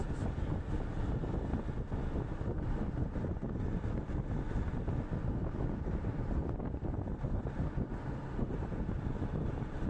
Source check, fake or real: real